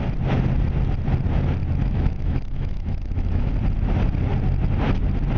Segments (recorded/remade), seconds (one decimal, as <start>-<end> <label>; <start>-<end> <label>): 0.0-1.8 recorded; 1.8-3.5 remade; 3.5-5.4 recorded